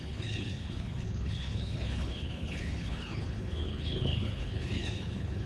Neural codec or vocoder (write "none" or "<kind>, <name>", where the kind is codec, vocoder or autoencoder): codec, HILCodec